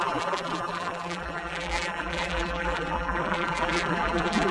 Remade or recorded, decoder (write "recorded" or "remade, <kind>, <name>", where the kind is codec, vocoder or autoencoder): remade, vocoder, BigVGAN v2